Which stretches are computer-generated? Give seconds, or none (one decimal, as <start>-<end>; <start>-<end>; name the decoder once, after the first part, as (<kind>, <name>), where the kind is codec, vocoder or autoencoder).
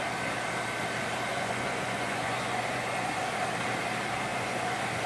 1.3-3.2 (vocoder, Vocos); 4.3-5.1